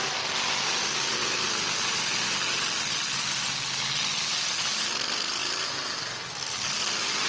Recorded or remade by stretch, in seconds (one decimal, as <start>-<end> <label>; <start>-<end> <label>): 0.0-0.6 remade; 0.6-7.3 recorded